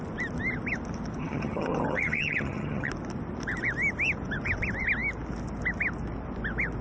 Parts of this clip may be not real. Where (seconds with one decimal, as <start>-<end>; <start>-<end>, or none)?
1.2-2.9